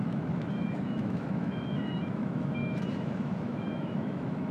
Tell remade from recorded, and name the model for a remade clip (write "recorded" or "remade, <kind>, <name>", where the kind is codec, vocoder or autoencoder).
remade, autoencoder, DAC-VAE